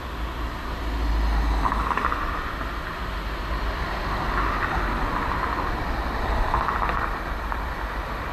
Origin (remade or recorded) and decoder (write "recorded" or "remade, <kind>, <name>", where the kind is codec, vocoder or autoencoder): recorded